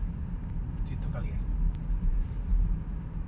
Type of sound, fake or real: real